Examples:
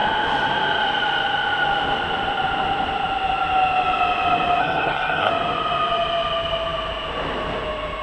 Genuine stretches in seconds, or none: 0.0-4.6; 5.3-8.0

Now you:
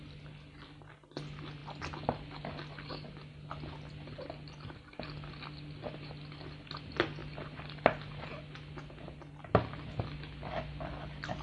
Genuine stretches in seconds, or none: 0.0-11.4

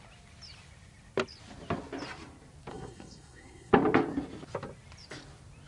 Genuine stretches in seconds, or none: 0.0-2.7; 3.7-5.7

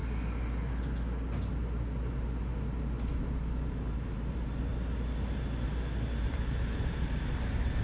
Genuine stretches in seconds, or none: 0.0-3.2; 4.7-6.1

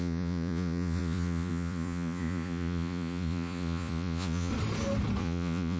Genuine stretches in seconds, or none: 4.5-5.2

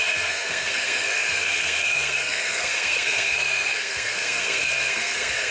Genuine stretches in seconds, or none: none

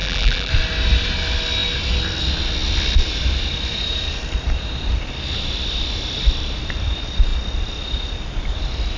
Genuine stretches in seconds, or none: 0.5-9.0

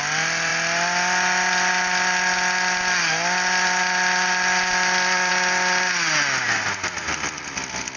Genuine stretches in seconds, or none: 0.0-8.0